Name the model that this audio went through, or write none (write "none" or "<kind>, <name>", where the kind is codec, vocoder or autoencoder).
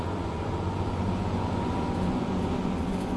vocoder, Vocos